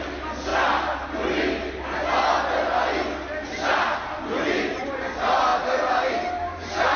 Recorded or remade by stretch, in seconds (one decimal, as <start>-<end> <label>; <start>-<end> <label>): 0.0-7.0 recorded